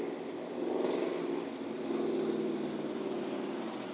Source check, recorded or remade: recorded